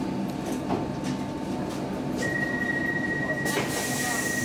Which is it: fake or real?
real